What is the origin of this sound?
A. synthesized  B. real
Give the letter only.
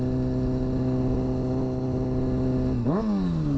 B